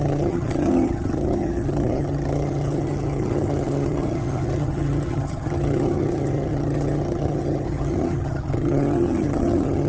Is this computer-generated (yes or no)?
yes